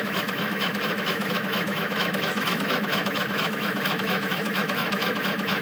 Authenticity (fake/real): fake